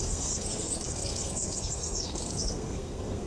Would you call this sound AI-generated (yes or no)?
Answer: yes